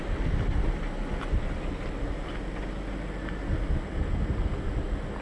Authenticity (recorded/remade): recorded